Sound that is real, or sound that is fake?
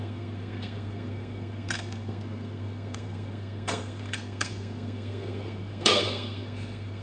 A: fake